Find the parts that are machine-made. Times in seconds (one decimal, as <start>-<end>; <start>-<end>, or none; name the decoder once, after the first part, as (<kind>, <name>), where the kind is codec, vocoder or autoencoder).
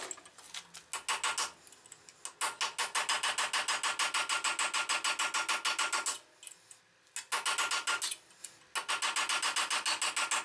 none